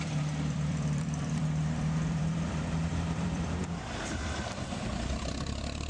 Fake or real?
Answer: fake